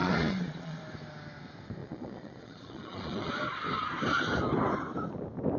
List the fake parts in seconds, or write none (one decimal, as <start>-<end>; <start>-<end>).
0.0-0.8; 1.8-3.3